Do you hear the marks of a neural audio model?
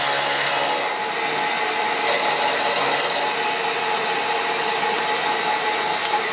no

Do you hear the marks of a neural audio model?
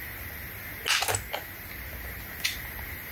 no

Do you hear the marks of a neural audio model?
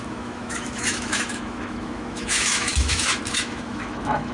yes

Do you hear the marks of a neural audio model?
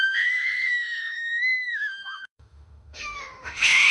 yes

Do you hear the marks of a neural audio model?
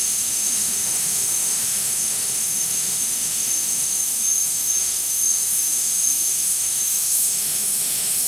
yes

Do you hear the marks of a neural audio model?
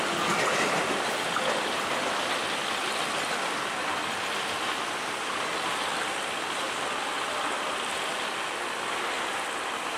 no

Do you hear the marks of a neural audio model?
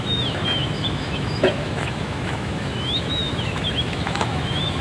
yes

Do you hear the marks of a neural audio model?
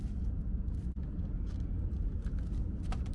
no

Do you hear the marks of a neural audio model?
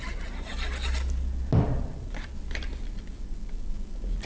no